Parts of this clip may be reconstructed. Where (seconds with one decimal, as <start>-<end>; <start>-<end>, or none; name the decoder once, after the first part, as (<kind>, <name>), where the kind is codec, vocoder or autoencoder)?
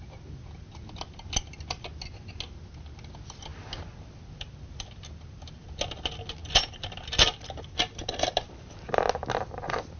none